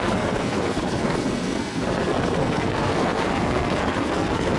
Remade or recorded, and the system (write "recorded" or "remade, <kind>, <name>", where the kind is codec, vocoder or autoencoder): remade, codec, SNAC